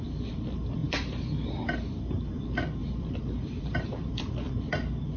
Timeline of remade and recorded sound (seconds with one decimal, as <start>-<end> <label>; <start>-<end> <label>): 0.0-0.8 recorded; 0.8-2.0 remade; 2.0-2.8 recorded; 2.8-4.5 remade; 4.5-5.2 recorded